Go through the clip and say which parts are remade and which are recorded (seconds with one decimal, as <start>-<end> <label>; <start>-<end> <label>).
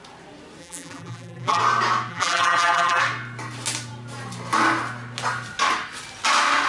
0.0-0.6 recorded; 0.6-1.6 remade; 1.6-2.1 recorded; 2.1-3.0 remade; 3.0-6.7 recorded